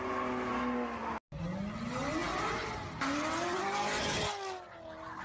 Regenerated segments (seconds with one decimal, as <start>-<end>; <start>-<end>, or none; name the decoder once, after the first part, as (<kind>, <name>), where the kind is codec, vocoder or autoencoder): none